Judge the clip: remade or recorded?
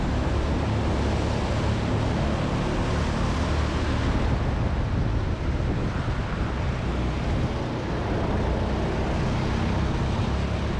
recorded